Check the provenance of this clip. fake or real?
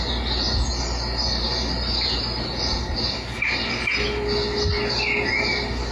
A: real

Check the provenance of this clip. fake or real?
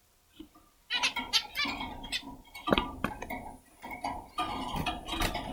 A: real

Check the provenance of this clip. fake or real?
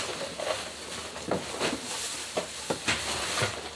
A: real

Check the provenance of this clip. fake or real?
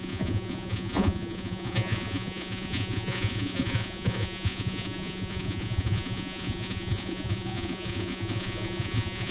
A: fake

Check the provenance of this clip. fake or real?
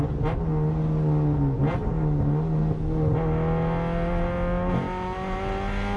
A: real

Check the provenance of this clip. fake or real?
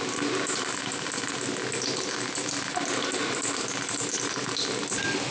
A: real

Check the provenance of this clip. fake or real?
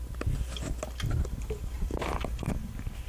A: real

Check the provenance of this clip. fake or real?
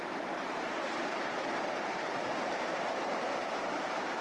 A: fake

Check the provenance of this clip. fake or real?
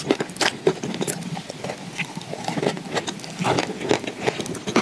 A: real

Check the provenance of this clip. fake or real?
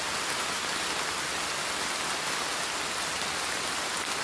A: real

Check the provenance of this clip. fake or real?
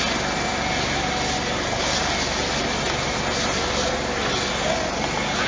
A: real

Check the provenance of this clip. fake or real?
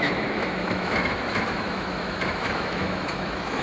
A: fake